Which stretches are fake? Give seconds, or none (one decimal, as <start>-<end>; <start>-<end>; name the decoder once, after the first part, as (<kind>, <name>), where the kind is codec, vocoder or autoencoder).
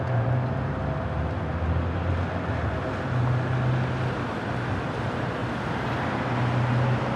none